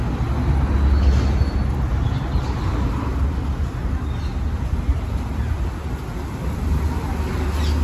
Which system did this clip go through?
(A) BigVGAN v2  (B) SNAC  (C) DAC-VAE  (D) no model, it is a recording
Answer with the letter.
D